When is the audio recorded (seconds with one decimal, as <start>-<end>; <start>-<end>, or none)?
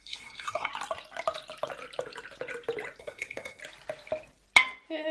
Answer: 0.7-3.0; 3.6-5.1